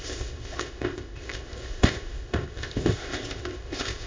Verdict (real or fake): fake